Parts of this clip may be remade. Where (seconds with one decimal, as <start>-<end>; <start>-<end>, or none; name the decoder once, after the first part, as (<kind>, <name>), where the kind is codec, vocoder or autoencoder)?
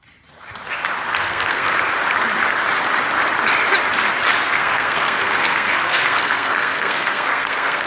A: 1.1-1.7 (codec, SNAC); 4.4-7.9